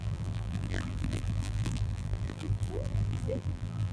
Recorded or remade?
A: remade